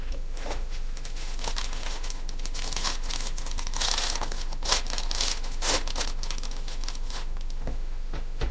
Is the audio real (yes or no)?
no